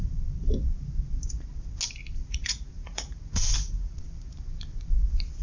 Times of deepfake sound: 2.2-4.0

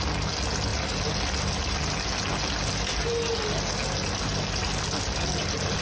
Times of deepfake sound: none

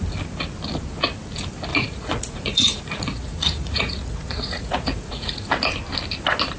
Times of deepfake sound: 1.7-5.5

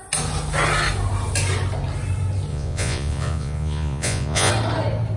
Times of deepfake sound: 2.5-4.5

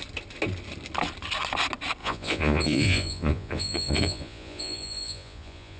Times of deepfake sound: 2.0-5.8

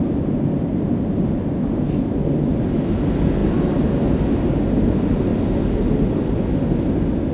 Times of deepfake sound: none